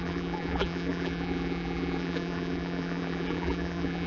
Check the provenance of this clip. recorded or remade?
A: remade